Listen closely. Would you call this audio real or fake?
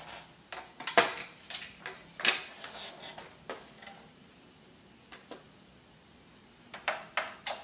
real